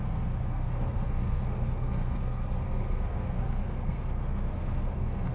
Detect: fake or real fake